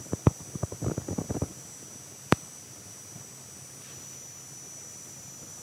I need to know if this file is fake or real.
real